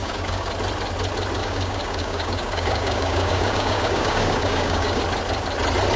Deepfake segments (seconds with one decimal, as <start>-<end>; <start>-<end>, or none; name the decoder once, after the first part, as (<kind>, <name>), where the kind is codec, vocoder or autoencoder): 0.0-0.5 (codec, DAC); 1.4-5.0